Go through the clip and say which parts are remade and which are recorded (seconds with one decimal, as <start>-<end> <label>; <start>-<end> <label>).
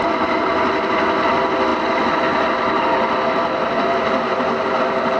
0.0-5.2 recorded